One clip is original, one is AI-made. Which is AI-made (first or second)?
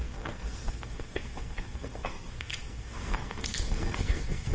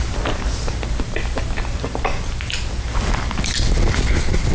first